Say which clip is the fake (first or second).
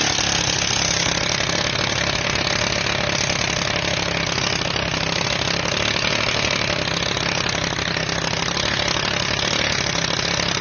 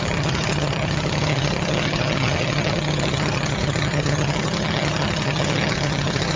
second